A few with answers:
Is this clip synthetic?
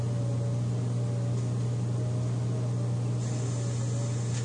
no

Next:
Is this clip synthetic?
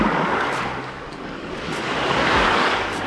yes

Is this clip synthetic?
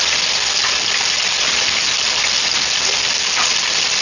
no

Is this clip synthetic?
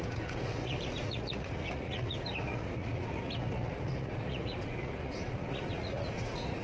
yes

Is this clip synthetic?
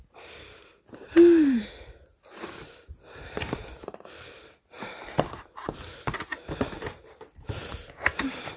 yes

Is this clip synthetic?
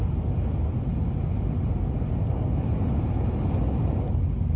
no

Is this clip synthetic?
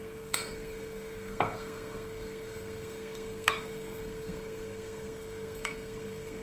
yes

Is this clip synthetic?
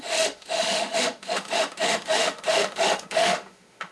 yes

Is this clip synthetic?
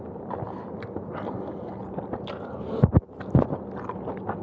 no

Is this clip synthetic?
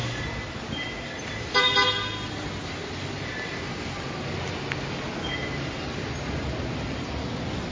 no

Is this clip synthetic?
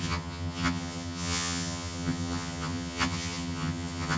yes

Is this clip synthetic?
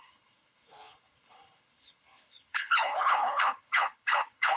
yes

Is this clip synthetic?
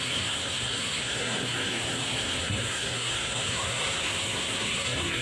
yes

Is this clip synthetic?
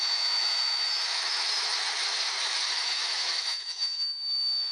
yes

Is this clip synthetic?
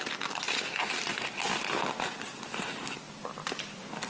no